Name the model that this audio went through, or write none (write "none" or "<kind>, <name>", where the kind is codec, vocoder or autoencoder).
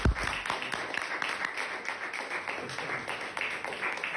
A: none